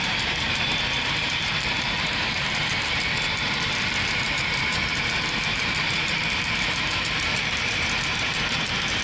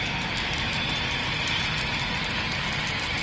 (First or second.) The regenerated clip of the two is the first